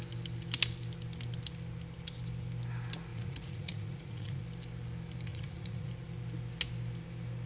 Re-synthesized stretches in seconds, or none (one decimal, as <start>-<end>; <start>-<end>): 3.1-4.4; 5.3-5.9